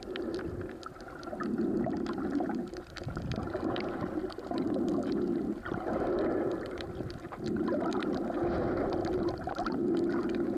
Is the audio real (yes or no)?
yes